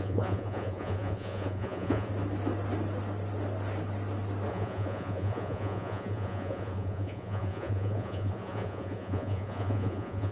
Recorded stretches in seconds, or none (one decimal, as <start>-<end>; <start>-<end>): 2.1-4.5